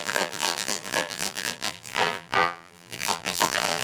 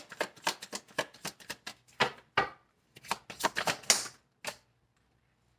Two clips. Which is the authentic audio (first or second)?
second